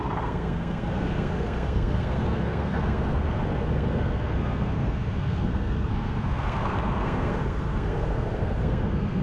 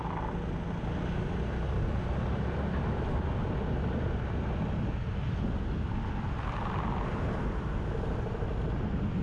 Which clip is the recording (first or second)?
second